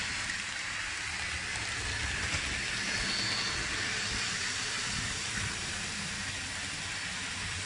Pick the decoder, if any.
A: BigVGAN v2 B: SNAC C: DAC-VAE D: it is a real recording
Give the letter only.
D